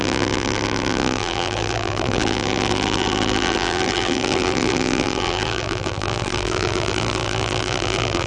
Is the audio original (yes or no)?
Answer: no